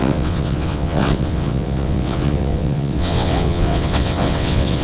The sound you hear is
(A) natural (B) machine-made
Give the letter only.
B